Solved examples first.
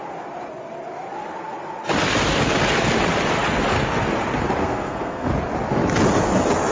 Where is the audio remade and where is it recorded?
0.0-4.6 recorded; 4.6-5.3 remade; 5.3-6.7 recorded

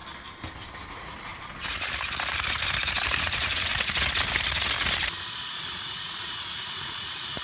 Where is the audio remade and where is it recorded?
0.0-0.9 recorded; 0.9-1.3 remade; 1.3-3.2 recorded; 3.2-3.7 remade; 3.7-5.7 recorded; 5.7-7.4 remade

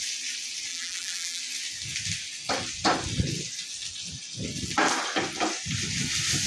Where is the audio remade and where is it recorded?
0.0-0.7 recorded; 0.7-1.4 remade; 1.4-6.5 recorded

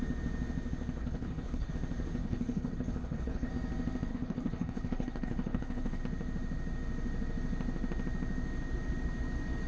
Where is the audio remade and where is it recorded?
0.0-1.0 recorded; 1.0-1.7 remade; 1.7-2.2 recorded; 2.2-3.5 remade; 3.5-4.1 recorded; 4.1-6.0 remade; 6.0-9.7 recorded

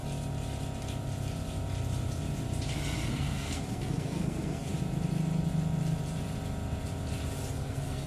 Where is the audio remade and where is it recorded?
0.0-3.1 recorded; 3.1-4.7 remade; 4.7-7.5 recorded; 7.5-8.1 remade